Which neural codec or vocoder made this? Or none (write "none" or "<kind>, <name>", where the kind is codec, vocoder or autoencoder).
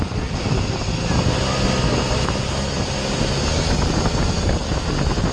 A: none